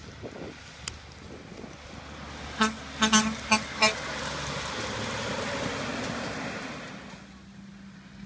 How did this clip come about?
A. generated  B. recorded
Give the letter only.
B